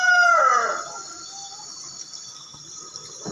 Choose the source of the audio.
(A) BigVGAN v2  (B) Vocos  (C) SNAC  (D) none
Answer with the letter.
D